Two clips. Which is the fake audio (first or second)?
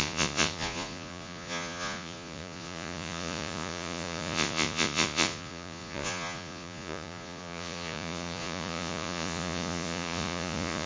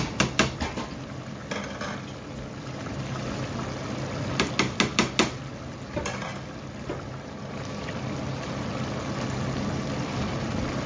first